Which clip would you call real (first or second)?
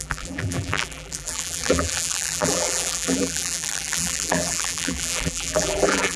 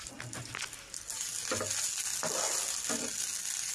second